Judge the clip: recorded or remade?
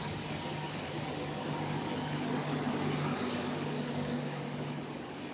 remade